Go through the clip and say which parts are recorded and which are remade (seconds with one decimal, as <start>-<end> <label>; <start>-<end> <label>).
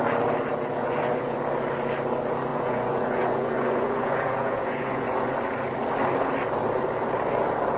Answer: 0.0-0.8 recorded; 0.8-1.4 remade; 1.4-2.5 recorded; 2.5-5.3 remade; 5.3-7.8 recorded